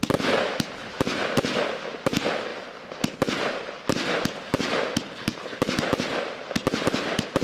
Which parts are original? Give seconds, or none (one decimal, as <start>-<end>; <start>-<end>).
0.0-7.4